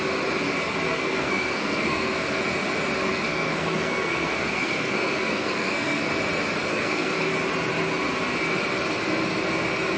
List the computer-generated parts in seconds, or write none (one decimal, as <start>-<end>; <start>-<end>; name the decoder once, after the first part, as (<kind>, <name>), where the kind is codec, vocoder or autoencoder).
0.9-2.4 (codec, SNAC); 3.1-6.1; 6.7-7.3